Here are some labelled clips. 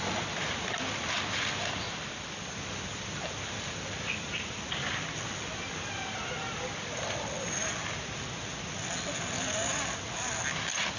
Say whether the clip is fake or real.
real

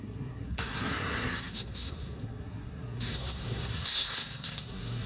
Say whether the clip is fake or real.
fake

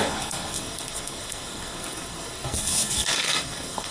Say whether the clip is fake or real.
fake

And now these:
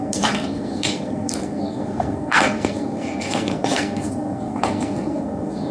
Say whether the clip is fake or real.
fake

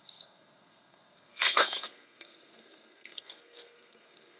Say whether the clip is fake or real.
fake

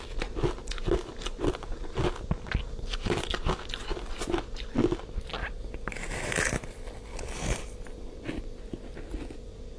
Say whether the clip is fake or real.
real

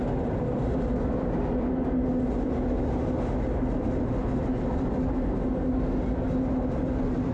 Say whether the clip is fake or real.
real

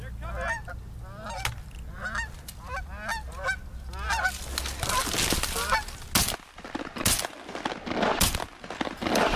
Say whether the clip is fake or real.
real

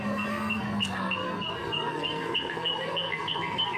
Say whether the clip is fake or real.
fake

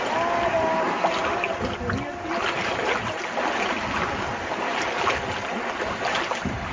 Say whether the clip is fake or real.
real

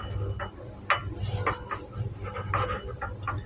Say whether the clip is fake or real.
real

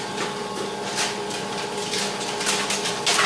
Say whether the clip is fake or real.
real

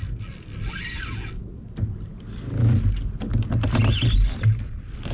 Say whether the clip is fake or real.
real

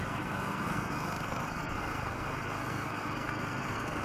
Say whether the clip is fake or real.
fake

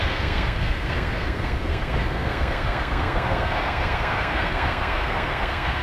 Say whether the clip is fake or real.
fake